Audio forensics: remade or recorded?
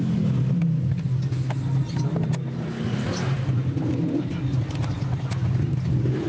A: recorded